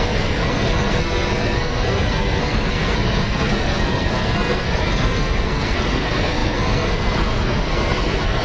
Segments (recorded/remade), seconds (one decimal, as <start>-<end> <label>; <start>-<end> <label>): 0.0-8.4 remade